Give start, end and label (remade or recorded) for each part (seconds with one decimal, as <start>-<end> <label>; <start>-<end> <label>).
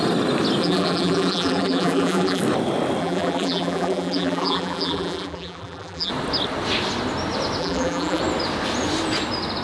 0.0-0.6 recorded; 0.6-2.4 remade; 2.4-3.0 recorded; 3.0-6.1 remade; 6.1-7.6 recorded; 7.6-8.2 remade; 8.2-9.6 recorded